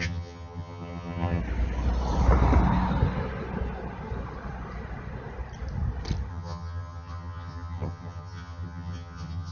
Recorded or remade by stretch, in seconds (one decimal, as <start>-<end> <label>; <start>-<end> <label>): 0.0-1.4 remade; 1.4-6.3 recorded; 6.3-9.5 remade